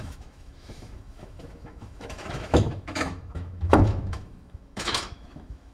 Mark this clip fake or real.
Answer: fake